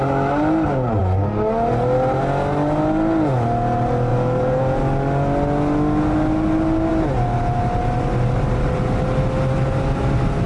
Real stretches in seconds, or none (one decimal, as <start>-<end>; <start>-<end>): 0.0-4.1; 4.8-10.5